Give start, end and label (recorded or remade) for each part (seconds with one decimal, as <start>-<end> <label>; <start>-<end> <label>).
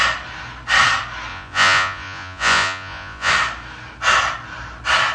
0.0-1.3 recorded; 1.3-3.3 remade; 3.3-5.1 recorded